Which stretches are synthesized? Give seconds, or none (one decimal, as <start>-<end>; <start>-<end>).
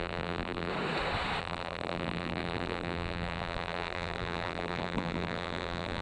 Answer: 0.0-0.7; 1.4-6.0